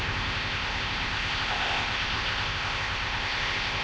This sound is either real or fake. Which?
fake